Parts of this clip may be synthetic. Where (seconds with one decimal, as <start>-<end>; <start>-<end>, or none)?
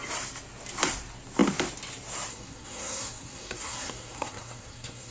2.3-5.1